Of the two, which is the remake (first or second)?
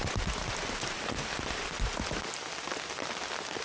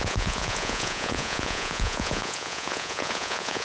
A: second